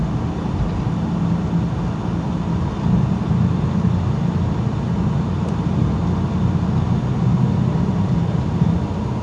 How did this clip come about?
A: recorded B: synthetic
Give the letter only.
A